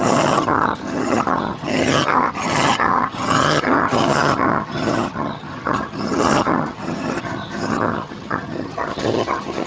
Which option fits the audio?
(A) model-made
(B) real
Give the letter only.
A